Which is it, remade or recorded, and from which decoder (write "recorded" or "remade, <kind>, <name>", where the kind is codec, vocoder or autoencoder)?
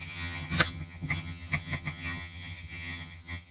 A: remade, vocoder, HiFi-GAN